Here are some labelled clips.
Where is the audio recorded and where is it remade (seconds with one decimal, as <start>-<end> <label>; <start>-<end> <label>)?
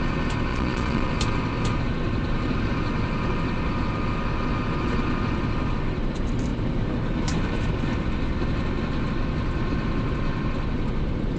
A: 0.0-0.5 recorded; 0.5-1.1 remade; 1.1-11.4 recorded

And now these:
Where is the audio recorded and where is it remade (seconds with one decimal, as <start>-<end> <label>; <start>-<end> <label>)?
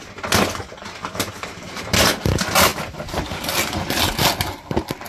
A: 0.0-5.1 recorded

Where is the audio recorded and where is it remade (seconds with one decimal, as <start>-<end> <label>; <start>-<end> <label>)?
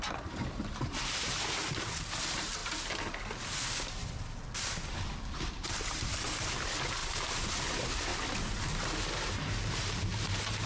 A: 0.0-2.6 remade; 2.6-5.2 recorded; 5.2-7.0 remade; 7.0-7.7 recorded; 7.7-8.1 remade; 8.1-9.0 recorded; 9.0-10.7 remade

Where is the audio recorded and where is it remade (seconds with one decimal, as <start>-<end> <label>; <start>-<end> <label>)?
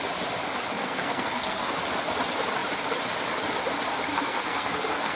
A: 0.0-0.8 recorded; 0.8-1.7 remade; 1.7-4.1 recorded; 4.1-5.2 remade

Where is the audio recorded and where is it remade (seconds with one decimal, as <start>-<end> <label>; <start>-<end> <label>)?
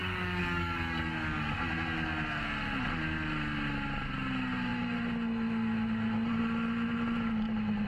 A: 0.0-1.6 remade; 1.6-7.9 recorded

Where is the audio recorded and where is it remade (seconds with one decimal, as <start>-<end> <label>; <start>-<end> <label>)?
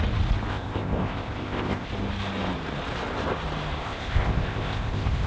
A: 0.0-0.5 recorded; 0.5-1.9 remade; 1.9-3.8 recorded; 3.8-5.3 remade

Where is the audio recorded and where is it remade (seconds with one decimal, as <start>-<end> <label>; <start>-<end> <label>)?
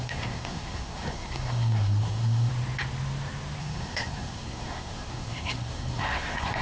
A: 0.0-2.5 remade; 2.5-3.6 recorded; 3.6-6.6 remade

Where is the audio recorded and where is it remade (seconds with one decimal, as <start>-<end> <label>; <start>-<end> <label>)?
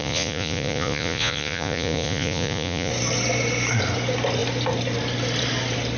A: 0.0-2.9 remade; 2.9-6.0 recorded